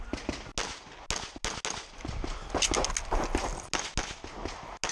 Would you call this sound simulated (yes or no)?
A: no